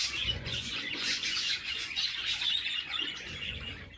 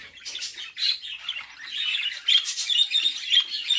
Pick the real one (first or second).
second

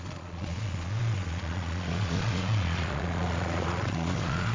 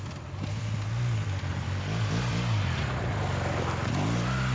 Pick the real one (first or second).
second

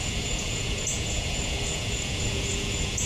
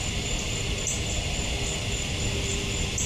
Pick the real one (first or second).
second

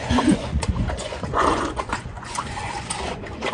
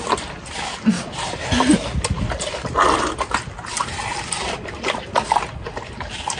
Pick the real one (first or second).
second